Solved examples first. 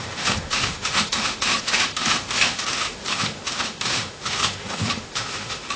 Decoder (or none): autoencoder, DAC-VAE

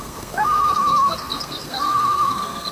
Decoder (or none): codec, SNAC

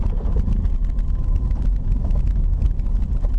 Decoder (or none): none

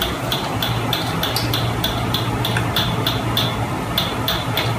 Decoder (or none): none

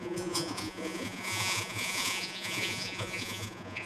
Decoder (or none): vocoder, Vocos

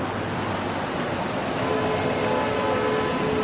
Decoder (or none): none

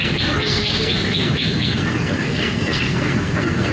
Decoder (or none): codec, SNAC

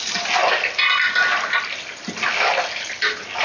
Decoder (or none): none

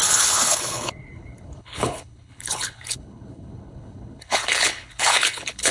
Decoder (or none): codec, HILCodec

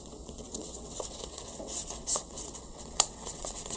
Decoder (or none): vocoder, WaveNeXt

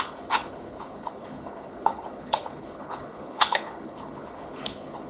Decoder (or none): codec, HILCodec